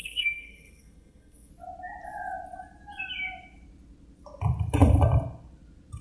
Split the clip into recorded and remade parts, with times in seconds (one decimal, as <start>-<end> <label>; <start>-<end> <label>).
0.0-1.5 remade; 1.5-6.0 recorded